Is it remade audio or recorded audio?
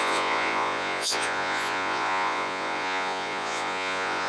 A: remade